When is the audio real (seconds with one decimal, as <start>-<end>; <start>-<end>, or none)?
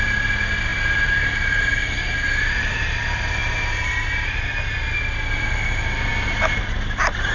0.0-7.3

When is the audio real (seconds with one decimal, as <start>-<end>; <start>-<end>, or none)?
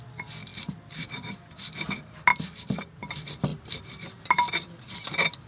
0.0-3.5; 4.8-5.5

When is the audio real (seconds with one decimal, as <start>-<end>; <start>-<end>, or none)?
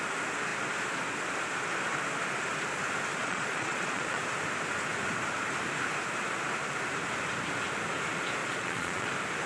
0.0-3.2; 4.2-8.4; 9.1-9.5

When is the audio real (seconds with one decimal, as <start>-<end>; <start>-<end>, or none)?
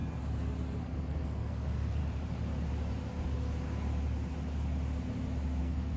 0.0-0.8; 2.0-5.6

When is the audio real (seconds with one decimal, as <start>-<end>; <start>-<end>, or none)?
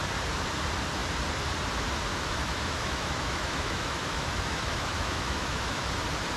0.0-2.1; 5.9-6.4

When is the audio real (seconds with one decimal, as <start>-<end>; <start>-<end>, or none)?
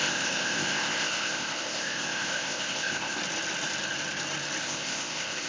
3.2-4.6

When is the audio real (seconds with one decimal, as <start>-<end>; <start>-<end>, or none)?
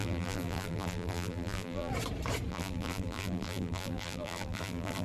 1.9-2.5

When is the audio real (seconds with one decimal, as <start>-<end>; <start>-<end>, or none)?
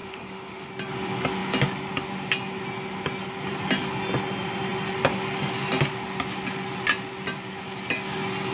0.7-8.5